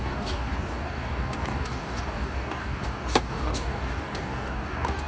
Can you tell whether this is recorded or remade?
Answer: remade